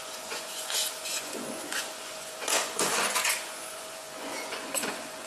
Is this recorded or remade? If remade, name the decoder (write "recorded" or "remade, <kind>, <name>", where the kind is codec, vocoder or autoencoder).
remade, vocoder, Vocos